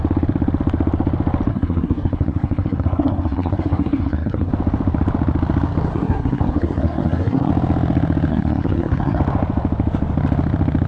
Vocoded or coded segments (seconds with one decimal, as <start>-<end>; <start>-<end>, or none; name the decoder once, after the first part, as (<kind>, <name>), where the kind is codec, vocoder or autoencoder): 1.5-4.5 (codec, SNAC); 5.9-7.5; 8.3-9.2